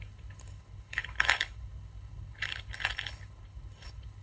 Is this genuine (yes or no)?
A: no